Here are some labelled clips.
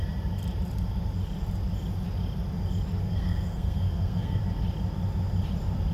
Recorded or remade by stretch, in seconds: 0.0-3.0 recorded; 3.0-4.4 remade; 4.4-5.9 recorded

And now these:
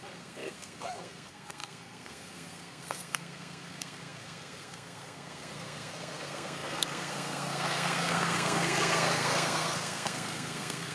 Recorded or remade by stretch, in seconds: 0.0-10.9 remade

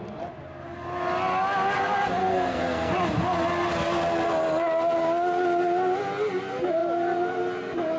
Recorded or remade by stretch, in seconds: 0.0-2.2 recorded; 2.2-2.9 remade; 2.9-8.0 recorded